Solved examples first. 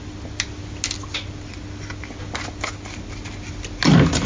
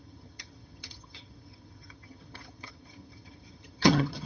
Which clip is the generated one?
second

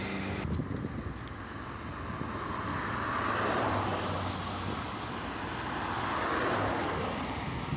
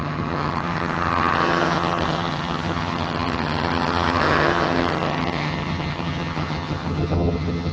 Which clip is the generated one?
second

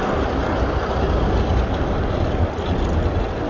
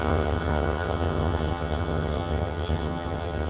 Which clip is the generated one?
second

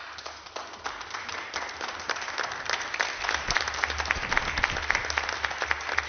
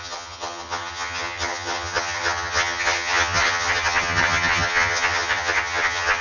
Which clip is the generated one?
second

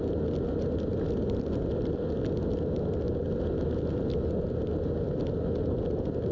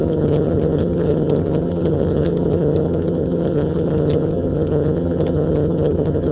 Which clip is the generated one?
second